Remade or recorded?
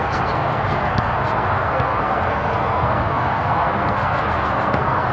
remade